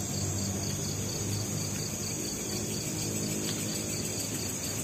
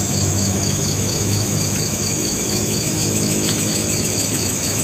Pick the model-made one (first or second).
second